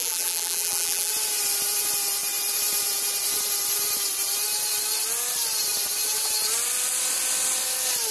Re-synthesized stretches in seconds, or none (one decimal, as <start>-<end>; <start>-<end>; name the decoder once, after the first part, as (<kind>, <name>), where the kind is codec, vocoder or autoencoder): 0.0-1.1 (vocoder, BigVGAN v2)